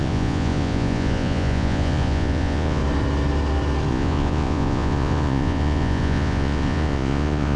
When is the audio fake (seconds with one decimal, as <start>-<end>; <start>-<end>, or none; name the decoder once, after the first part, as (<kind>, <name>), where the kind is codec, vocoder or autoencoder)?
0.0-2.8 (vocoder, Vocos); 3.9-7.6